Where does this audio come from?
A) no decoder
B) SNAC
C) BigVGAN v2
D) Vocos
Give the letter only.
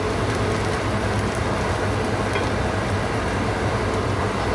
A